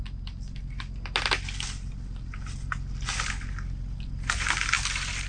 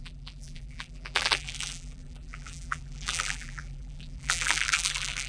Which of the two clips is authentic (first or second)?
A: first